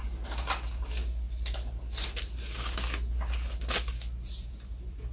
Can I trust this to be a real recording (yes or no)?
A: yes